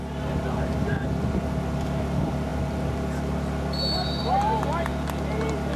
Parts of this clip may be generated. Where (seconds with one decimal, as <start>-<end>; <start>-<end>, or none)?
none